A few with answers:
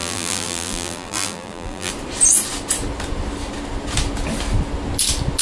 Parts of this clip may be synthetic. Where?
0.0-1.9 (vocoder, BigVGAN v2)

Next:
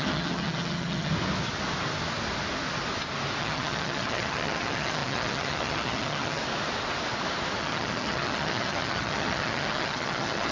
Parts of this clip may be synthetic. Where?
0.0-1.1 (vocoder, HiFi-GAN); 3.4-6.4; 7.6-10.5

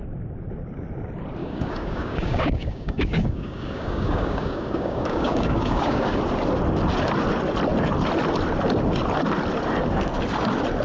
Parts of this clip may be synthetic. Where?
1.4-6.2 (codec, DAC)

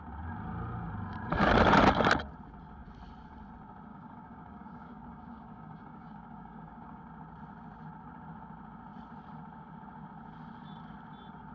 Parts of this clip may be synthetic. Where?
3.9-7.0 (codec, DAC)

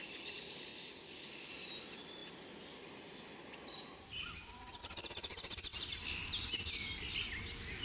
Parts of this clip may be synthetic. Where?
0.0-0.7 (vocoder, BigVGAN v2); 1.5-2.2; 4.8-5.7; 7.2-7.8